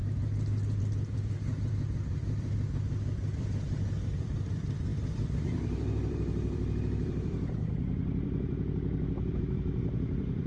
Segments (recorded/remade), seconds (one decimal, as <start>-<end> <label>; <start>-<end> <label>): 0.0-0.8 recorded; 0.8-10.5 remade